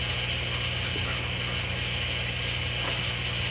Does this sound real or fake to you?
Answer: real